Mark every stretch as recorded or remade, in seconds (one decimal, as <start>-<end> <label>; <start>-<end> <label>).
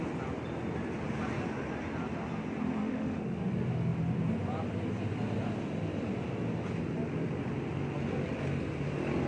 0.0-2.8 recorded; 2.8-3.4 remade; 3.4-9.3 recorded